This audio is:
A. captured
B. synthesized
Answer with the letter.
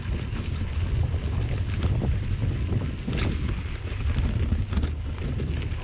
A